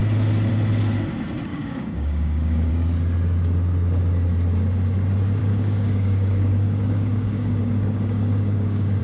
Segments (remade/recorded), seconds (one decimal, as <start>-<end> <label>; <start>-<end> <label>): 0.0-1.5 recorded; 1.5-2.7 remade; 2.7-5.4 recorded; 5.4-9.0 remade

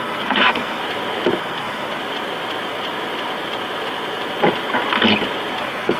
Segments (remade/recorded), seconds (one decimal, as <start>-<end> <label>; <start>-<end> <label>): 0.0-0.8 remade; 0.8-1.4 recorded; 1.4-2.0 remade; 2.0-5.6 recorded; 5.6-6.0 remade

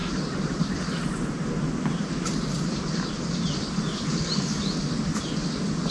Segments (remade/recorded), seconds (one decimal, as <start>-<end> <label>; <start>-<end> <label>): 0.0-5.9 recorded

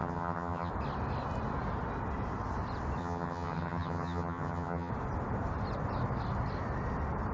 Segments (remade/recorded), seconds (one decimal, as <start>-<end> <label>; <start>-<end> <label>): 0.0-0.7 remade; 0.7-3.0 recorded; 3.0-4.9 remade; 4.9-7.3 recorded